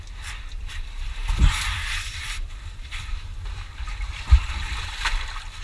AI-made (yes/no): yes